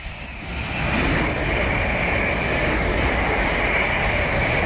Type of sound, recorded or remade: recorded